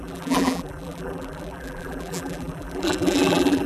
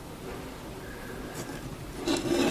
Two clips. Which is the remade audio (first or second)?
first